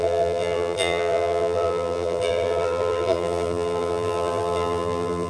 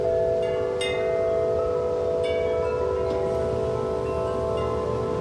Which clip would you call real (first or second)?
second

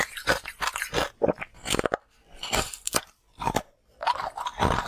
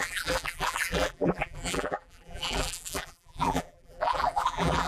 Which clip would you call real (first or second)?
first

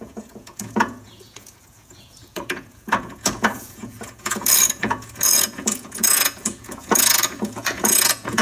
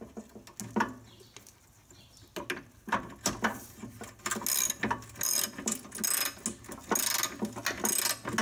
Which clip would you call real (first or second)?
second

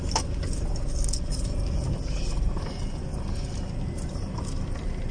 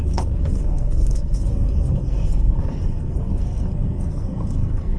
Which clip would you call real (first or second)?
first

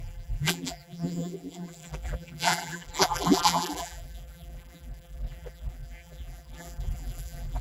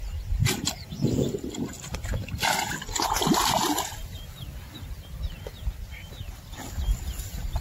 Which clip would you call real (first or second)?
second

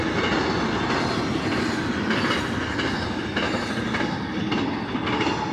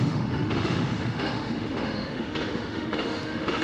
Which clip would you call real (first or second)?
first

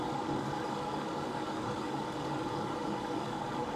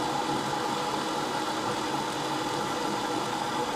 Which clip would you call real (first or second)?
second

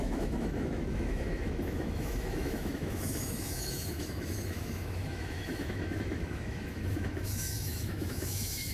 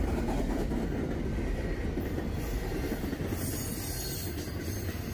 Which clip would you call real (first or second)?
second